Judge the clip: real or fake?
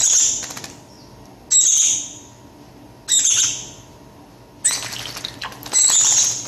real